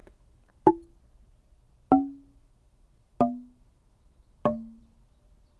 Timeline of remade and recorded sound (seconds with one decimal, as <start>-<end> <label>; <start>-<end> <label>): 0.0-0.7 remade; 0.7-2.3 recorded; 2.3-4.8 remade; 4.8-5.6 recorded

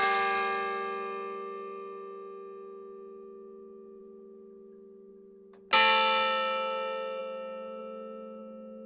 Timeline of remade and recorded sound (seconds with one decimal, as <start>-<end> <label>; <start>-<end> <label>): 0.0-8.9 recorded

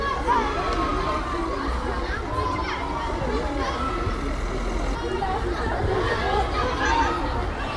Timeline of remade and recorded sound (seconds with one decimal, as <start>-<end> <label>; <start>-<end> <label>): 0.0-7.8 recorded

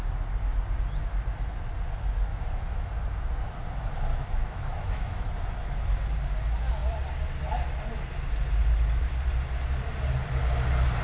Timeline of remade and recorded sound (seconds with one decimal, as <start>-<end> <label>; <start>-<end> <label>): 0.0-2.3 recorded; 2.3-2.9 remade; 2.9-4.1 recorded; 4.1-5.5 remade; 5.5-11.0 recorded

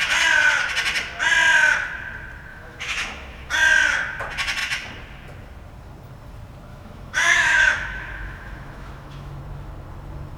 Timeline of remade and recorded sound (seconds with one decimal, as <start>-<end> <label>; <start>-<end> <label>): 0.0-2.5 recorded; 2.5-3.5 remade; 3.5-6.7 recorded; 6.7-9.4 remade; 9.4-10.4 recorded

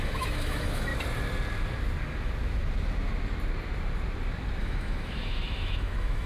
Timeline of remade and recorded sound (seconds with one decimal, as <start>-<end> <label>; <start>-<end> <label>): 0.0-0.9 remade; 0.9-4.6 recorded; 4.6-6.3 remade

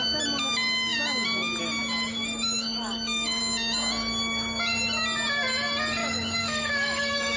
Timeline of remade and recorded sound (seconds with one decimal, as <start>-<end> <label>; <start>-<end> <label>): 0.0-2.1 recorded; 2.1-3.4 remade; 3.4-6.0 recorded; 6.0-7.4 remade